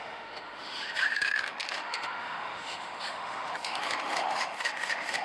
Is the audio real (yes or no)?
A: no